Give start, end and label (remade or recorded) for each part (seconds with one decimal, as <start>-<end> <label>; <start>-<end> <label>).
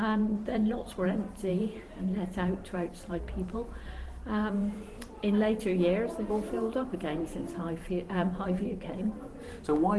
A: 0.0-5.7 remade; 5.7-6.3 recorded; 6.3-10.0 remade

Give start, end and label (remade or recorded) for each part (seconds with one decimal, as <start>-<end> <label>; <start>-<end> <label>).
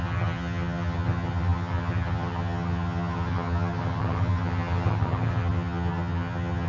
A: 0.0-6.7 remade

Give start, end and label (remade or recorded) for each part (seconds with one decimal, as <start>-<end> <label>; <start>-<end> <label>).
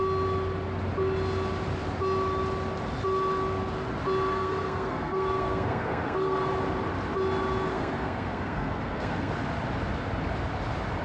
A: 0.0-4.3 recorded; 4.3-6.5 remade; 6.5-7.7 recorded; 7.7-9.3 remade; 9.3-11.0 recorded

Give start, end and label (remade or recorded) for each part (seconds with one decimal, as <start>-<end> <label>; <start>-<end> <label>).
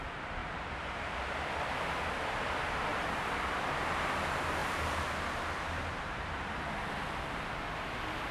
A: 0.0-0.4 recorded; 0.4-1.7 remade; 1.7-4.6 recorded; 4.6-6.6 remade; 6.6-8.3 recorded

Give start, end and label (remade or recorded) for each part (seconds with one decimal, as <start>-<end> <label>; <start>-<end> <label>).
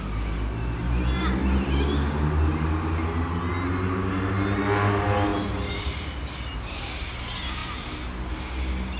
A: 0.0-9.0 recorded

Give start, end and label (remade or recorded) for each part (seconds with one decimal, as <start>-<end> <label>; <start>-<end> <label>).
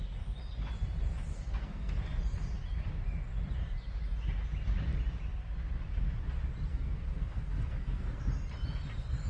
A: 0.0-1.3 recorded; 1.3-1.9 remade; 1.9-6.7 recorded; 6.7-8.2 remade; 8.2-9.3 recorded